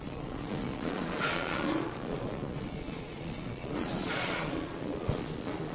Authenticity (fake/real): fake